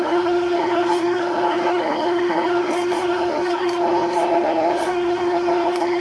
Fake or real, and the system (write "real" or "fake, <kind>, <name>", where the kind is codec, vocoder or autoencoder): fake, codec, SNAC